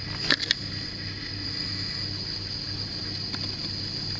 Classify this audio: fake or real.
real